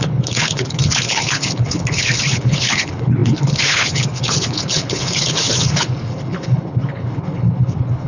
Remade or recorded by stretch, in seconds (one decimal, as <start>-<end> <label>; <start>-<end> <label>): 0.0-8.1 remade